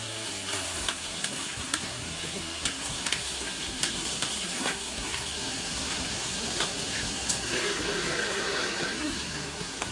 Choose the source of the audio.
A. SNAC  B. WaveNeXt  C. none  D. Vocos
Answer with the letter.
A